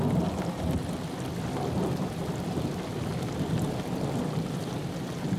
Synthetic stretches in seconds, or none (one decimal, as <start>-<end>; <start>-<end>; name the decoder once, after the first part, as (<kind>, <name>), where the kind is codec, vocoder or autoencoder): none